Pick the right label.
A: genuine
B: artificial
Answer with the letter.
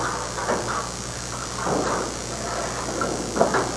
A